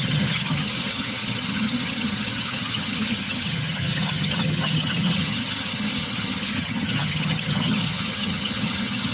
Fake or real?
fake